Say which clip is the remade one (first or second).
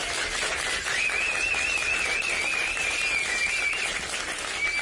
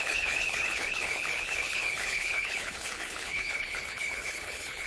second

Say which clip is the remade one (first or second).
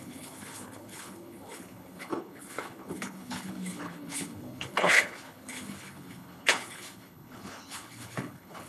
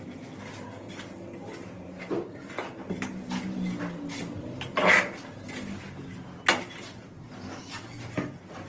first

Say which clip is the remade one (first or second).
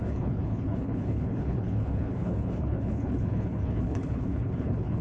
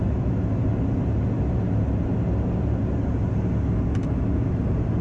first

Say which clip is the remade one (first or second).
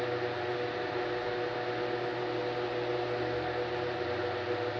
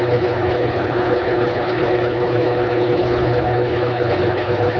second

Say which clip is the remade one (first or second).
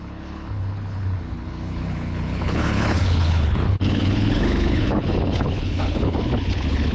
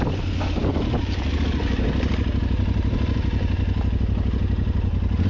first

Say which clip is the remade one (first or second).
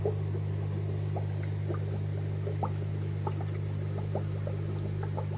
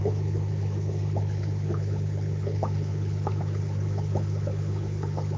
second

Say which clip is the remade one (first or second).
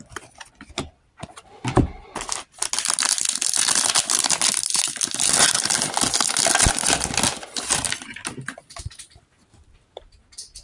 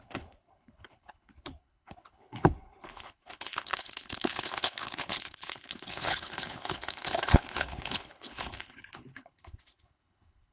second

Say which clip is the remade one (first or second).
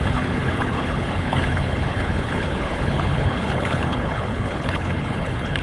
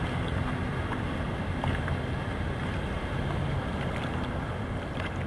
first